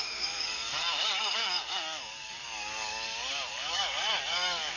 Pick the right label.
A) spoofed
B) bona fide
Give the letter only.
A